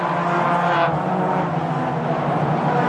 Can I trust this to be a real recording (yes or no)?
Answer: yes